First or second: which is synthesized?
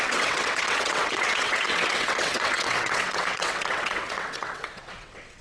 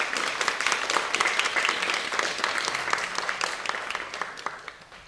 first